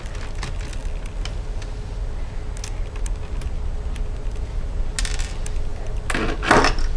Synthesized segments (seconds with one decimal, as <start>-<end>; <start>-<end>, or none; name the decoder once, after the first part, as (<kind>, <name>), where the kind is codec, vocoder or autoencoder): none